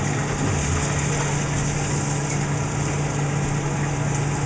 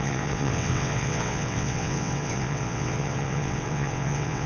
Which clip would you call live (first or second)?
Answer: first